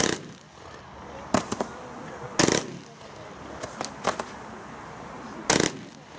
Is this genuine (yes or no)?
yes